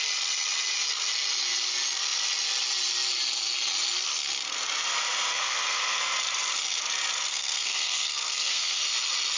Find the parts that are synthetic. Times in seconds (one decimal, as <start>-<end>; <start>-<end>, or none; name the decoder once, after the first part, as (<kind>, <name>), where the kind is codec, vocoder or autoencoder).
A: 5.3-6.0 (codec, SNAC); 7.3-8.8